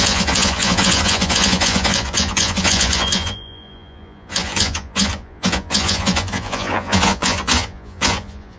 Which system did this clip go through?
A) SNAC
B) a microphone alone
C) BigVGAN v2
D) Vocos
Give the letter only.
D